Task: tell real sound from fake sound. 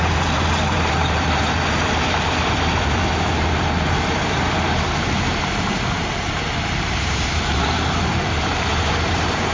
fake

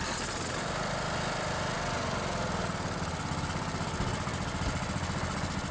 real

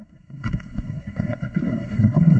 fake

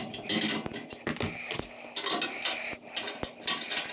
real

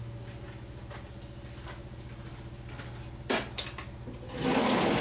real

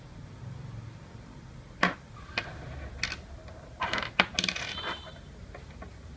real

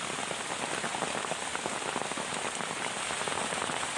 real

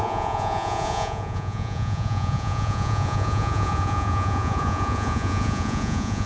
fake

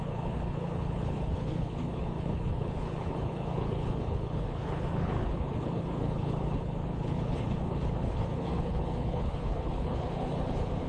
fake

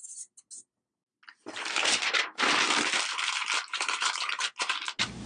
real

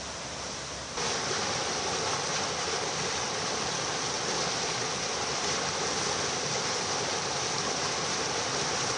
real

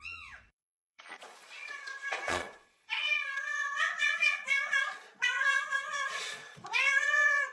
fake